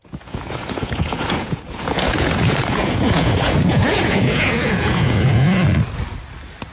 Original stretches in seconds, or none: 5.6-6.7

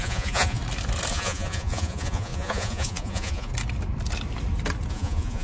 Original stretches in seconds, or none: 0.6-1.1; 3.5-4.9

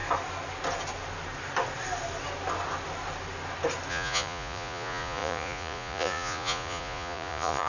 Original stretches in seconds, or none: 0.0-3.9

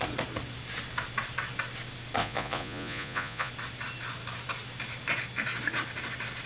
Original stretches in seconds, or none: 0.0-2.2; 3.5-6.5

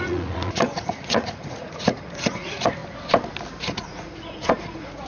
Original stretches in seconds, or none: 2.8-3.6

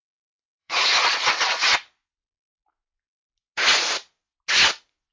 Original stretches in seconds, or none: 0.0-0.6; 1.3-5.1

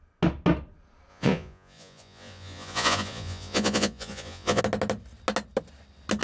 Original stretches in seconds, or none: 0.0-1.1; 4.6-6.2

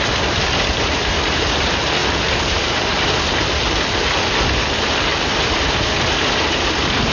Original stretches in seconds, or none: 0.0-7.1